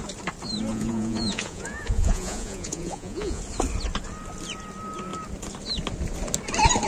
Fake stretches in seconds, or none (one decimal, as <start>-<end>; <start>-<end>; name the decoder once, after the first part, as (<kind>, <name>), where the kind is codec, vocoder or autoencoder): 0.7-3.4 (vocoder, Vocos)